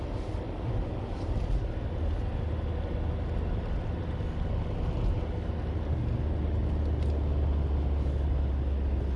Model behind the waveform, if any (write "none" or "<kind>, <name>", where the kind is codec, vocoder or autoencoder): none